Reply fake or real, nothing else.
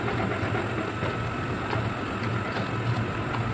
real